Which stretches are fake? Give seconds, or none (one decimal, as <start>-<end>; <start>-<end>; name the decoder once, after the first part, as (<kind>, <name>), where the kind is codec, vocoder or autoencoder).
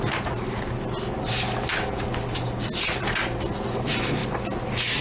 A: none